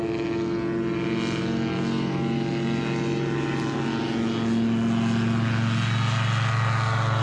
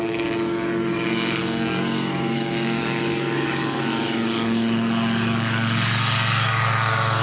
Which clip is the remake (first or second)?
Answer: second